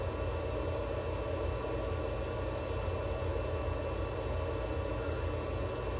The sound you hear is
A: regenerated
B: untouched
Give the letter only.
B